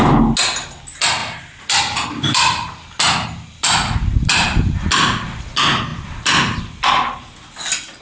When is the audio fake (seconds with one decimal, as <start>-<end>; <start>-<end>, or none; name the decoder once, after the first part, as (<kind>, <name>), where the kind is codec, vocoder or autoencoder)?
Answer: none